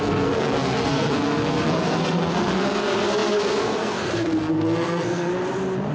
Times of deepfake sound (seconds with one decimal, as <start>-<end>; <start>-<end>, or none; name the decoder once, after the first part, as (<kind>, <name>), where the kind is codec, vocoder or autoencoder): 0.0-5.3 (codec, SNAC)